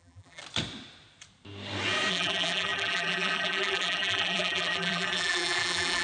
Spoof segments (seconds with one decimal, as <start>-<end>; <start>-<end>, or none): 0.0-0.4; 2.1-6.0